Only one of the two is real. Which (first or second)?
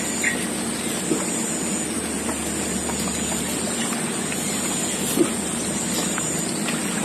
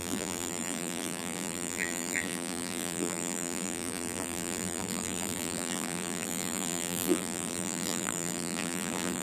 first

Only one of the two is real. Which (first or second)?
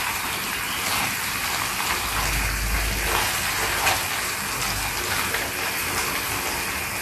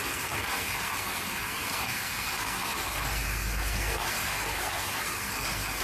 first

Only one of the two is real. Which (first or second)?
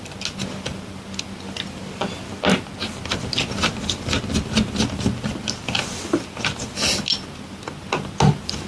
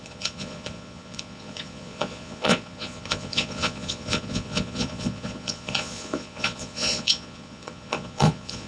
first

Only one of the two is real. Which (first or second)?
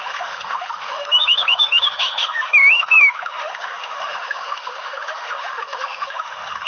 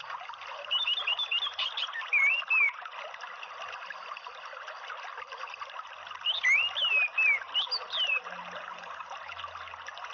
second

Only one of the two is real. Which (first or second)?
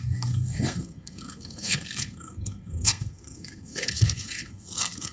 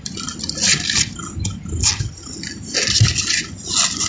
second